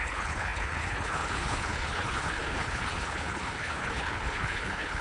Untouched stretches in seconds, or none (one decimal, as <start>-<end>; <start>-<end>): none